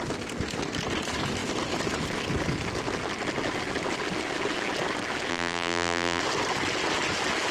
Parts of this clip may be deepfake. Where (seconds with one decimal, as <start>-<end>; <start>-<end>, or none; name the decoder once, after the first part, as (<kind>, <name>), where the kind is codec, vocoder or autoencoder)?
5.3-6.2 (vocoder, BigVGAN v2)